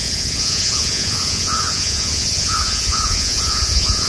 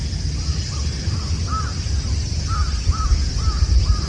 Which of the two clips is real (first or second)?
second